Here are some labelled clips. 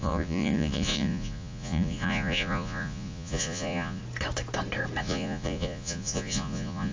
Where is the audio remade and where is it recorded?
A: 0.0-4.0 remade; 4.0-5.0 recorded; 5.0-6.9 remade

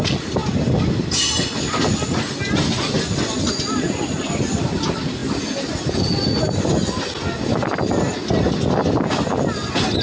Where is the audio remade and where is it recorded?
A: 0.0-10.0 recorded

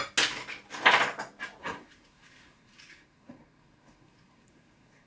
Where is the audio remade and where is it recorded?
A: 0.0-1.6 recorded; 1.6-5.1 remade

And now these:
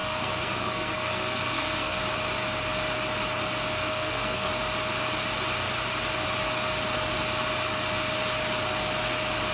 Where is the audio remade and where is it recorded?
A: 0.0-2.0 remade; 2.0-3.9 recorded; 3.9-4.5 remade; 4.5-9.5 recorded